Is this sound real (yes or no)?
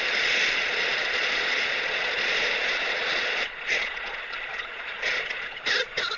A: no